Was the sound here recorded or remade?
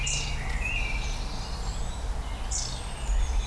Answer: recorded